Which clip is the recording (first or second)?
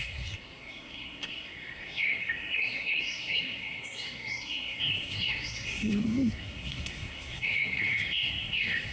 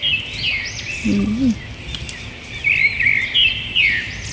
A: second